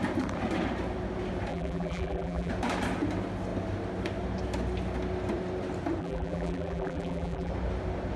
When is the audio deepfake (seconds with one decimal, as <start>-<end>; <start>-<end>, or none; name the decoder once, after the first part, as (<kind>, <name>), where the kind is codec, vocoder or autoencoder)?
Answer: 1.5-2.5 (vocoder, BigVGAN v2); 6.0-7.5